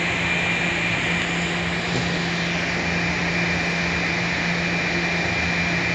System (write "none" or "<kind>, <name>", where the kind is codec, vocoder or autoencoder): none